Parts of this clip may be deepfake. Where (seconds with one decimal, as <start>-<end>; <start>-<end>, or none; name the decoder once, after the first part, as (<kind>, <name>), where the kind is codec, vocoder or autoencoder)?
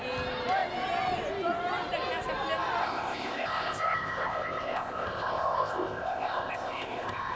2.8-7.4 (codec, ZipCodec)